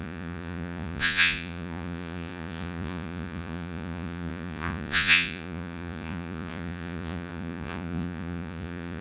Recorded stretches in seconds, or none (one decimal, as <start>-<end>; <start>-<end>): none